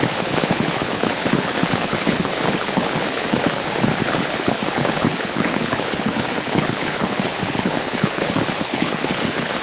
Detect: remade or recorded remade